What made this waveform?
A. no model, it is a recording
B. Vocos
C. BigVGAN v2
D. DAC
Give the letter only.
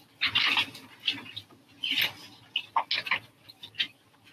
A